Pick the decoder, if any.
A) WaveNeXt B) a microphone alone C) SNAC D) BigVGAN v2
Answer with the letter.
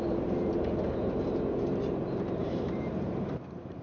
D